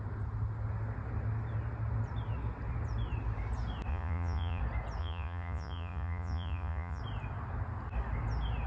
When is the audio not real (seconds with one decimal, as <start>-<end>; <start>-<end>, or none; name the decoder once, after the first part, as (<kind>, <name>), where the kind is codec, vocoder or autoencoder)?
3.9-4.6 (vocoder, Vocos); 5.0-7.0